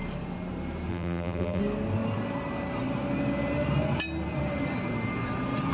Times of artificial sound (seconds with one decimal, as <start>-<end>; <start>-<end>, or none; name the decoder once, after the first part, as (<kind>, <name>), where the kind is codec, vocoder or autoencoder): 0.9-1.6 (vocoder, BigVGAN v2)